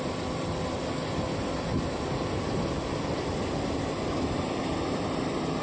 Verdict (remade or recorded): recorded